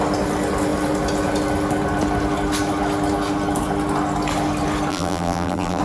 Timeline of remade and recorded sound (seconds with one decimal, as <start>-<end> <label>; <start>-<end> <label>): 0.0-4.9 recorded; 4.9-5.8 remade